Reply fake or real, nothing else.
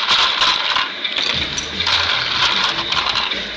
real